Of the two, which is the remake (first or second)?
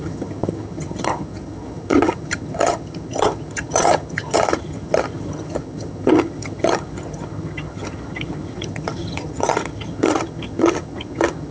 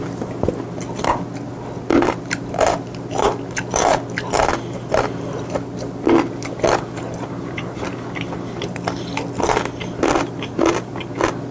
first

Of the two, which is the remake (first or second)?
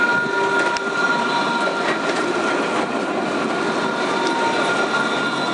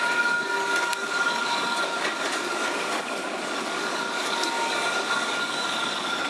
second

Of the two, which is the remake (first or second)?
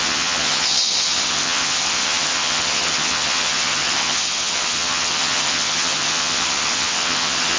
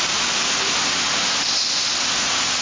first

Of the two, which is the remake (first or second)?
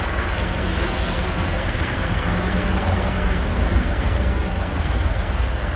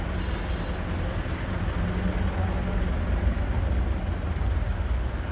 first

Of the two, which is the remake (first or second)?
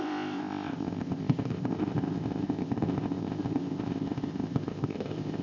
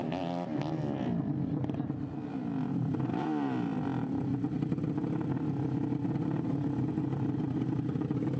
first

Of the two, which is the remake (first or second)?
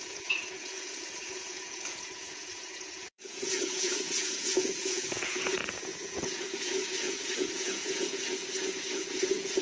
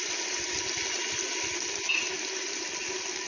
first